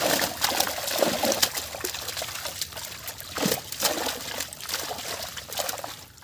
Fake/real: real